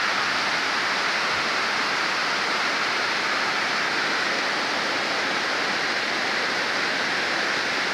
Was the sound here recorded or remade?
recorded